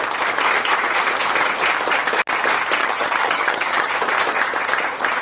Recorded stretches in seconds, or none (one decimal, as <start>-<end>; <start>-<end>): 0.0-2.8; 3.9-5.2